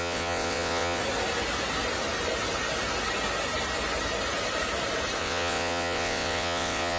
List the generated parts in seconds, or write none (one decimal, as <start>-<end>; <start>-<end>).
0.0-1.0; 5.2-7.0